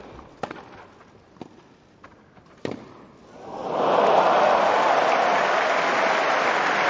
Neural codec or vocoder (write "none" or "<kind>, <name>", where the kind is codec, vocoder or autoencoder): none